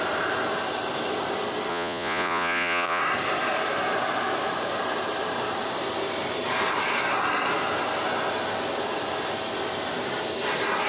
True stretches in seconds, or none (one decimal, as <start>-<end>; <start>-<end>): 0.0-1.7; 3.0-10.9